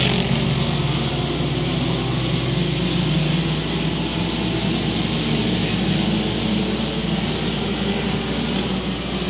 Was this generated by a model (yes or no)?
no